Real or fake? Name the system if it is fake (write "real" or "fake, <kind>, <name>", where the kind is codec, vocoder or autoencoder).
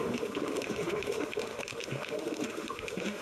fake, autoencoder, DAC-VAE